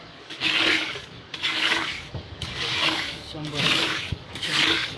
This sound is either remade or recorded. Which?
remade